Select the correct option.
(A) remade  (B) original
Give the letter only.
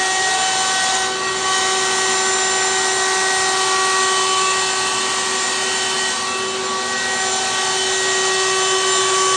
B